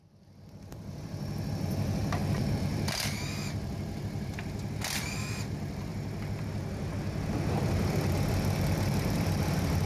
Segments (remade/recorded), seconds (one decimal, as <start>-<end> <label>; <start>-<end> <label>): 0.0-5.9 remade; 5.9-7.3 recorded; 7.3-9.9 remade